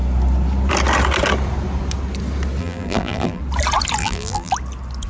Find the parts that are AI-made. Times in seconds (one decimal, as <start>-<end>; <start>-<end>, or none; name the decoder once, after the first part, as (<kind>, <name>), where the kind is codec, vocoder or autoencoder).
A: 2.6-3.4 (vocoder, BigVGAN v2); 4.0-4.5

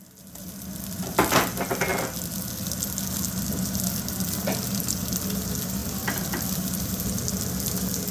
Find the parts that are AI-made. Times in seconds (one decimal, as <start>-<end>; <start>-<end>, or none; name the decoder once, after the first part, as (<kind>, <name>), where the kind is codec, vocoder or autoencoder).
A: 5.8-7.5 (vocoder, BigVGAN v2)

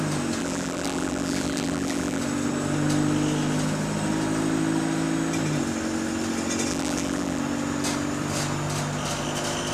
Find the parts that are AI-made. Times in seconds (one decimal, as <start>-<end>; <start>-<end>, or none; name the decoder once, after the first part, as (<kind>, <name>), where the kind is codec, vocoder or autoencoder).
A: 0.4-2.2 (vocoder, BigVGAN v2); 6.7-7.4

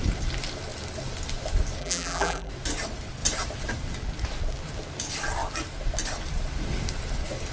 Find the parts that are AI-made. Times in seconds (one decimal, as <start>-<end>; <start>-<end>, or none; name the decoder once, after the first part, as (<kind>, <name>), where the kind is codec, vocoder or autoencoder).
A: 1.8-2.5 (vocoder, BigVGAN v2)

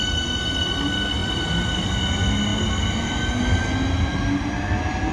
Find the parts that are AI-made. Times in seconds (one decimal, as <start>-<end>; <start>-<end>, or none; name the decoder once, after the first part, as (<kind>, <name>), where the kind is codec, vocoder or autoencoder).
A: 1.2-1.9 (vocoder, BigVGAN v2)